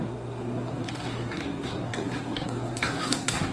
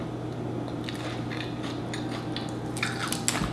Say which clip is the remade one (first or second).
first